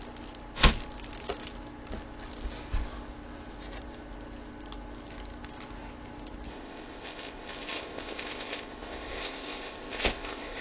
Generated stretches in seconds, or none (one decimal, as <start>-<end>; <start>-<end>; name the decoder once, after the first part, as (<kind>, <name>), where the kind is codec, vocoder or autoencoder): 6.5-10.6 (codec, ZipCodec)